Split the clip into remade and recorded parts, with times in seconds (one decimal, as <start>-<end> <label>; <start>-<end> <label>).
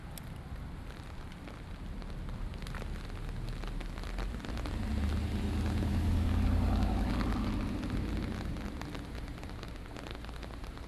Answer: 0.0-5.9 recorded; 5.9-7.5 remade; 7.5-10.9 recorded